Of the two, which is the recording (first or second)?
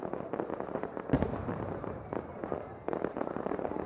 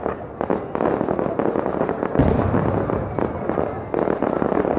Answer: second